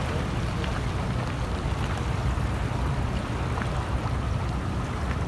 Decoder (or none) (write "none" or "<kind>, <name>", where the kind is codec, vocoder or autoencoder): none